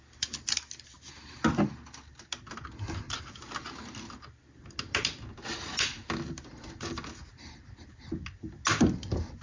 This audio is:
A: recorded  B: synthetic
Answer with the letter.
A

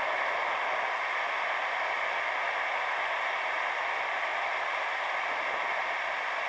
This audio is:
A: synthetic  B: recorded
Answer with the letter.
B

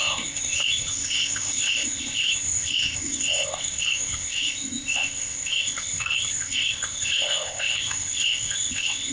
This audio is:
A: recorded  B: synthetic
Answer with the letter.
B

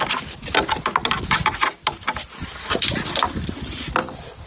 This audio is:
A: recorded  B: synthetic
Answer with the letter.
A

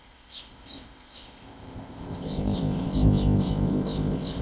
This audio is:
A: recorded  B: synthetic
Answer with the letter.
B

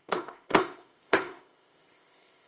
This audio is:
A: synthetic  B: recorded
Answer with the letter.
A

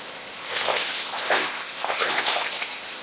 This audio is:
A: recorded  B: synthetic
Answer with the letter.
B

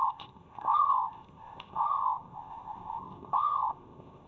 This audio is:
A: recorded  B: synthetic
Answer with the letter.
B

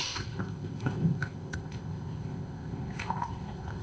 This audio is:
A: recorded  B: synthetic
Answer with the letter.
B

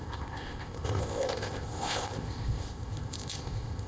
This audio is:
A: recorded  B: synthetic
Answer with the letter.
B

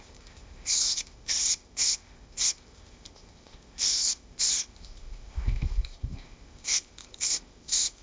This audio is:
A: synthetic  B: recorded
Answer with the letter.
A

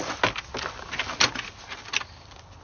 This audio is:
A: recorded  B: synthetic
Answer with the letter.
A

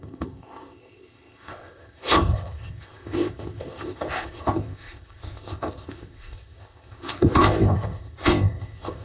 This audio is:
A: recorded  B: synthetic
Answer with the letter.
B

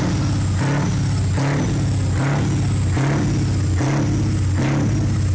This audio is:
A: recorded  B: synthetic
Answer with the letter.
A